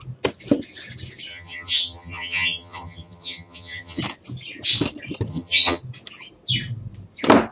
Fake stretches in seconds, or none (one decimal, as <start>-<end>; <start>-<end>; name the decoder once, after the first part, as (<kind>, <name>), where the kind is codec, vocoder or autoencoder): 1.3-4.0 (vocoder, HiFi-GAN); 5.3-5.8